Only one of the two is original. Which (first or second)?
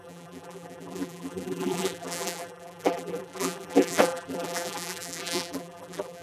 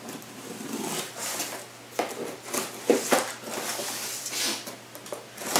second